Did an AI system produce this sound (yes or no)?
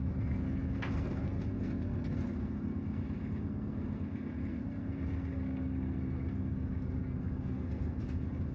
yes